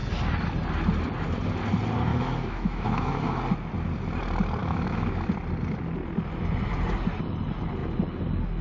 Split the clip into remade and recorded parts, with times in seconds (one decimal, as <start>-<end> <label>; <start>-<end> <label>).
0.0-2.1 recorded; 2.1-3.4 remade; 3.4-4.6 recorded; 4.6-5.3 remade; 5.3-8.6 recorded